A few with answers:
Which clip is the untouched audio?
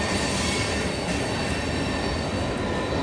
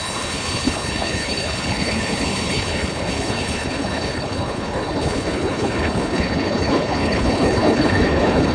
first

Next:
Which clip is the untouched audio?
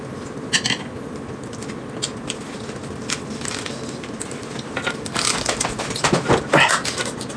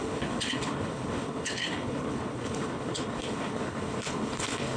first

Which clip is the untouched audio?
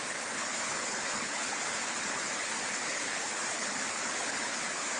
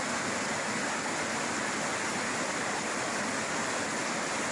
second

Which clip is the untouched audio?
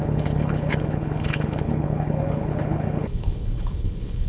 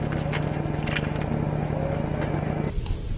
second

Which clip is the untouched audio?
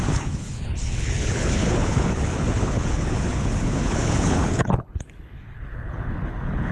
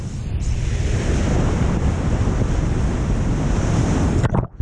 second